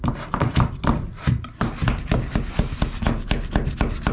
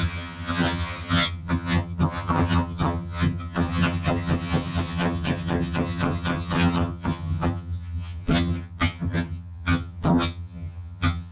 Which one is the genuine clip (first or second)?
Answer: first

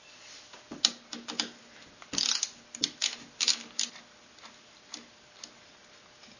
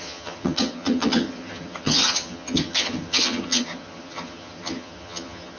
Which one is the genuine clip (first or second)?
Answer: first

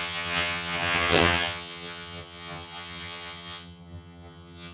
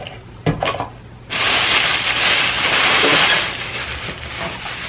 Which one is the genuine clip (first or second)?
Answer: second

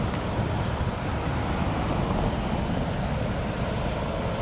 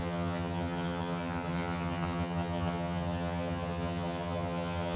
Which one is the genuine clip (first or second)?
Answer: first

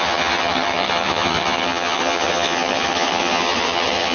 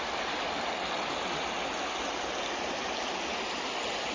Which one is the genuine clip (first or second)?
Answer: second